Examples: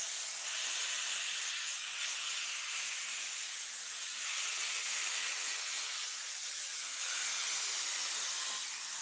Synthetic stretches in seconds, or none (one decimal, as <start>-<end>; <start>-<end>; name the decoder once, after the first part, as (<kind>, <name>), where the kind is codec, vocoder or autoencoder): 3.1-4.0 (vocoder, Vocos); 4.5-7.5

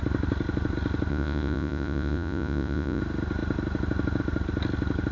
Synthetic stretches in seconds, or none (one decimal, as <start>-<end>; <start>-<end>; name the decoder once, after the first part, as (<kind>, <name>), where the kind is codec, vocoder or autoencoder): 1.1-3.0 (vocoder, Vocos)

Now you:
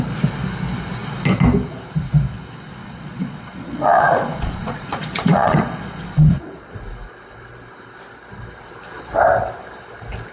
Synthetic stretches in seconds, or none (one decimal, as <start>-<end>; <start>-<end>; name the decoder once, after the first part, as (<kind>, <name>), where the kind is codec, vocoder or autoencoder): 2.8-6.7 (vocoder, Vocos)